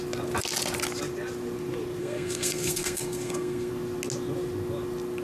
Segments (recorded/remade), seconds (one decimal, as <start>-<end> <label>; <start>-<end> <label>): 0.0-2.0 recorded; 2.0-3.7 remade; 3.7-5.2 recorded

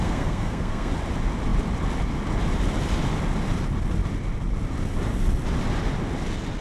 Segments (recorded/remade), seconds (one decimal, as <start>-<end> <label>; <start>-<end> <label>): 0.0-0.9 remade; 0.9-6.6 recorded

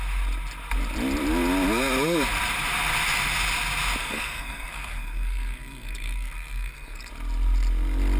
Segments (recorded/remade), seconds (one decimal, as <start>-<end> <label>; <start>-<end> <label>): 0.0-4.0 recorded; 4.0-7.1 remade; 7.1-8.2 recorded

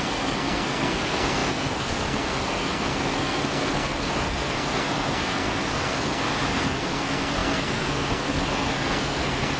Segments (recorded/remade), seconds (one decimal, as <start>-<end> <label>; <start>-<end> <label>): 0.0-9.6 remade